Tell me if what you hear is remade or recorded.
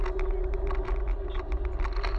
recorded